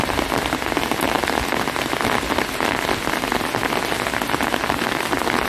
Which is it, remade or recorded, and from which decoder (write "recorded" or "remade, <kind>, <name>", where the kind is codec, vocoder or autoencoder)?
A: recorded